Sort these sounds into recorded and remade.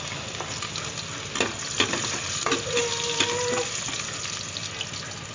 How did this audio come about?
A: recorded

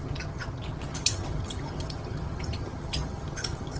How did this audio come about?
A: remade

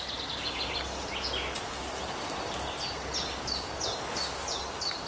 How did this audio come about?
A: recorded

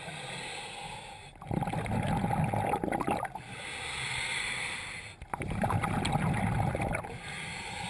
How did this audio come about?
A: recorded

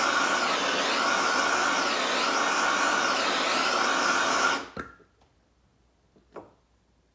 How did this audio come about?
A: recorded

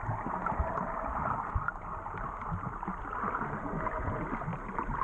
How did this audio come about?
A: recorded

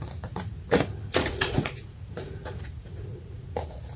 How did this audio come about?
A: remade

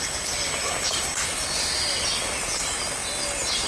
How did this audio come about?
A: recorded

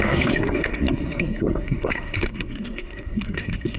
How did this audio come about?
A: remade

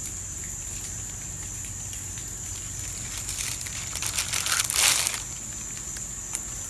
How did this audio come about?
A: recorded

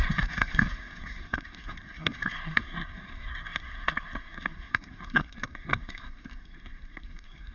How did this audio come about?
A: remade